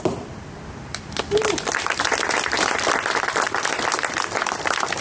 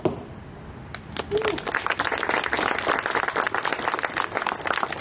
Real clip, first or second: second